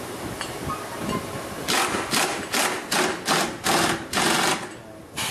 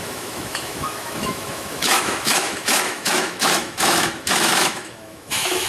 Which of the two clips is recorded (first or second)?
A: first